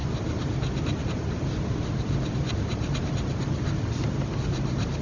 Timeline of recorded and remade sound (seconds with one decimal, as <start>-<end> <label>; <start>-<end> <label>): 0.0-5.0 recorded